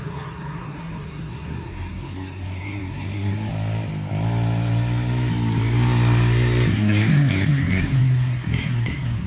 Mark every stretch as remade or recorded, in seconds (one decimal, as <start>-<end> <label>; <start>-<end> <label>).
0.0-3.5 remade; 3.5-6.7 recorded; 6.7-9.3 remade